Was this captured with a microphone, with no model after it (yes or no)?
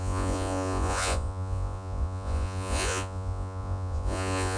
no